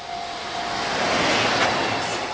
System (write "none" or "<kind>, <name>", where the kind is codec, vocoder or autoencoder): none